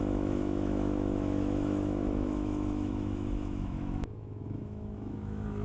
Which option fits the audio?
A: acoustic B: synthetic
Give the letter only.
B